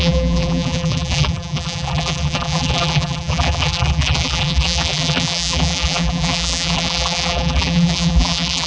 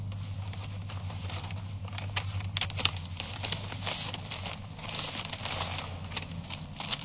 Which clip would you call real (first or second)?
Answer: second